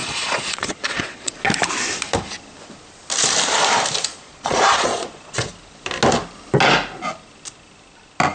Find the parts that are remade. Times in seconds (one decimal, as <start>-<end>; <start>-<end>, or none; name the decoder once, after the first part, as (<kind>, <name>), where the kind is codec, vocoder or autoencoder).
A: 0.0-1.3 (vocoder, Vocos); 4.1-5.5